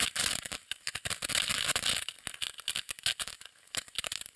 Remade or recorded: recorded